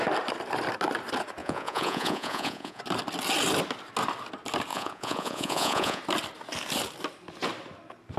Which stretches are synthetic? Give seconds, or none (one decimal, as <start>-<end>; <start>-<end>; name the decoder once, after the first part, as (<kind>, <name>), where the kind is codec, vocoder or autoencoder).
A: 1.4-2.8 (vocoder, Vocos); 4.7-6.0